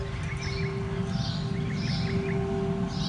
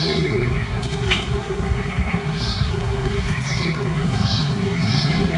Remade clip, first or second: second